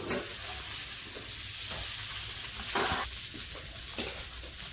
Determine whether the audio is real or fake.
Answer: real